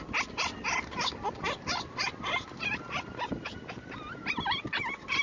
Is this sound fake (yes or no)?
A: no